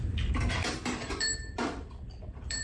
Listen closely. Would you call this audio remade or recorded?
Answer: remade